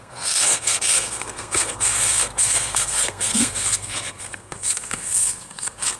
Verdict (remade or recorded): remade